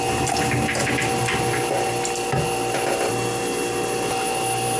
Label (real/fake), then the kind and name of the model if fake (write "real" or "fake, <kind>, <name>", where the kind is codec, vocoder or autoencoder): real